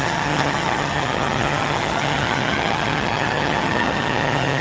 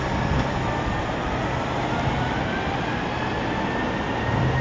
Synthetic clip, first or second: first